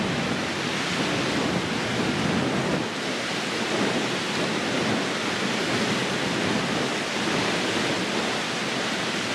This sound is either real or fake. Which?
real